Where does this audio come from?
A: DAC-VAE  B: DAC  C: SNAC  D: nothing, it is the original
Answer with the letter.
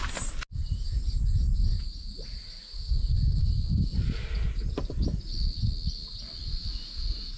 D